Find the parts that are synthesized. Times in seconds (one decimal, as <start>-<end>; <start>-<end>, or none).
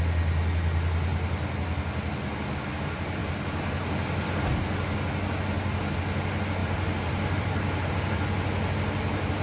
6.6-7.9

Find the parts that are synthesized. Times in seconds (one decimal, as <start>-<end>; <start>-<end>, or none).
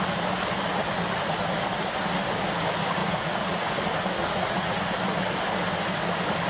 3.0-3.7; 4.2-4.8